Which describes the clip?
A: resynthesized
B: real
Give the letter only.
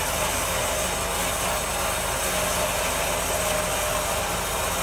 B